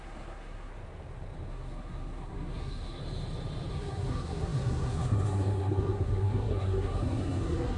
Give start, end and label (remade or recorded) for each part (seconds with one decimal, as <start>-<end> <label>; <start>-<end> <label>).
0.0-0.7 remade; 0.7-1.5 recorded; 1.5-3.0 remade; 3.0-3.7 recorded; 3.7-7.8 remade